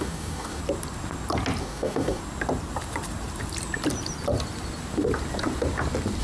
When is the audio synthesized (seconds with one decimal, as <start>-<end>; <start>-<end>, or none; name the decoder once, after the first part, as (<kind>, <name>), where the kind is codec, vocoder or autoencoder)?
0.0-0.6 (codec, DAC); 1.6-2.2